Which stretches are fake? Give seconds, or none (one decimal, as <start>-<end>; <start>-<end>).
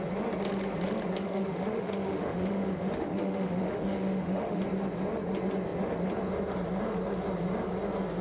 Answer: 1.2-4.6